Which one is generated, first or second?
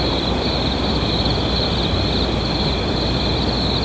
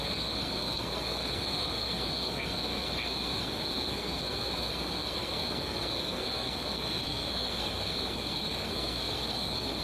second